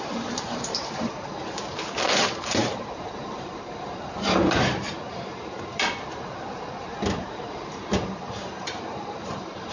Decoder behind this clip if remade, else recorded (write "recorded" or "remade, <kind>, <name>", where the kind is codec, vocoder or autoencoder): remade, vocoder, BigVGAN v2